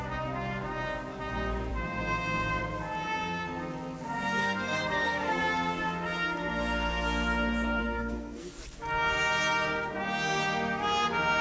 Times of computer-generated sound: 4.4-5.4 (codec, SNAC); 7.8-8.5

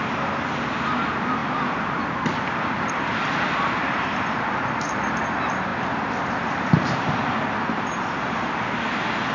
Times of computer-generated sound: none

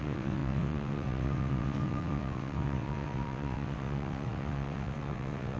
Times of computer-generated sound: 0.0-5.6 (vocoder, WaveNeXt)